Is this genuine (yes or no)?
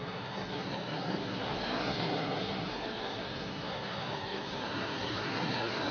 no